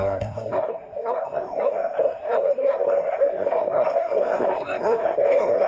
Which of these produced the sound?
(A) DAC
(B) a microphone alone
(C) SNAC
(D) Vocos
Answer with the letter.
C